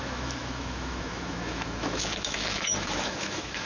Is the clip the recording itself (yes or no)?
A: no